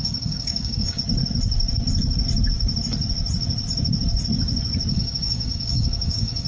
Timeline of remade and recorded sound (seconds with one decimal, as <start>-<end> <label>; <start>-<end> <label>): 0.0-1.0 remade; 1.0-4.9 recorded; 4.9-6.5 remade